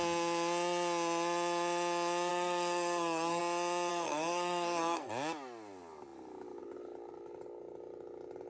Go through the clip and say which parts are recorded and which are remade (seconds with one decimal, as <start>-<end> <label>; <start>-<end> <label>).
0.0-2.3 recorded; 2.3-3.4 remade; 3.4-3.9 recorded; 3.9-5.1 remade; 5.1-8.5 recorded